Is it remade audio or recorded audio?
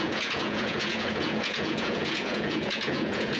remade